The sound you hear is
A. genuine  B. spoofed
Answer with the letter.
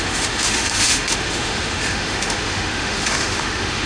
B